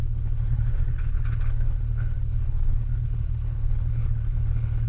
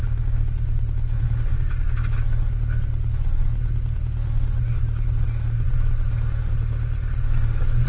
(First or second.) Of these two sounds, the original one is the second